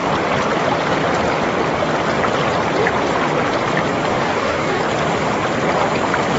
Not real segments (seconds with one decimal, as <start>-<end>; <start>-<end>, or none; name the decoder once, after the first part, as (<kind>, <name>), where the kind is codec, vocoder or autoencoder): 4.1-4.8 (codec, DAC)